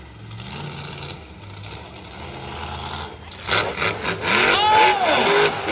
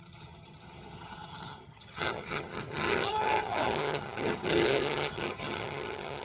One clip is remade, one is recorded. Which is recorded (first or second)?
first